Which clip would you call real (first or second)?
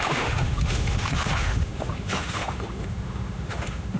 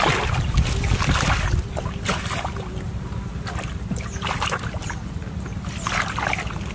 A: second